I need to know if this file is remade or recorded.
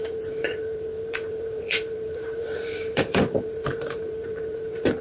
remade